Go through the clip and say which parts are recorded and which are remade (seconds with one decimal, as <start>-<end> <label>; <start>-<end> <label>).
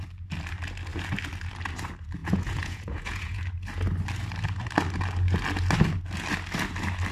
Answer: 0.0-2.2 recorded; 2.2-3.4 remade; 3.4-7.1 recorded